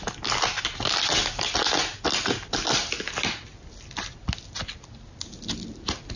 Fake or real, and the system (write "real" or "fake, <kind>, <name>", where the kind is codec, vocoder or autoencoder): real